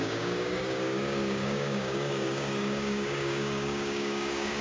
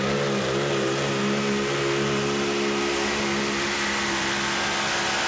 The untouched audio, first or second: second